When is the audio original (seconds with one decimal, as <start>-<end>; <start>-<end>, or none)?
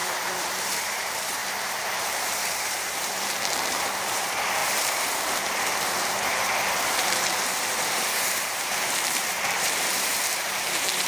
none